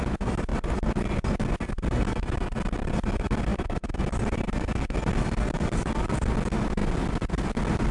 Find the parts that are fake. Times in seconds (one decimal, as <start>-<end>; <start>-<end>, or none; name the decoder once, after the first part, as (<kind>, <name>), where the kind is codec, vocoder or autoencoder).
none